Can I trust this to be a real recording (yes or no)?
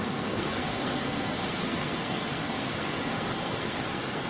no